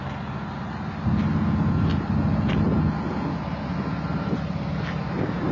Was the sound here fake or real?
real